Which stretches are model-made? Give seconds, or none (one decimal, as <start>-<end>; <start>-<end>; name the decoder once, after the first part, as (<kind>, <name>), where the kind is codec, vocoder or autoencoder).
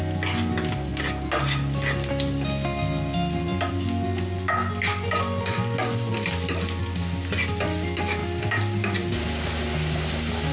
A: none